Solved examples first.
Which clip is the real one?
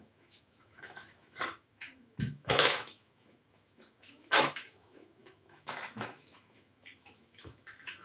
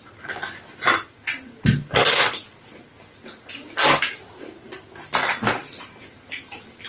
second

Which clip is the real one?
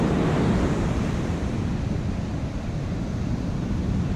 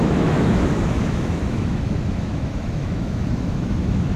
first